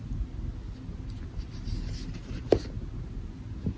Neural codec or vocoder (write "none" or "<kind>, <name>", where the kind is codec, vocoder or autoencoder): none